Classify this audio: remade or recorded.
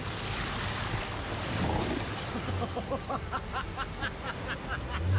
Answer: recorded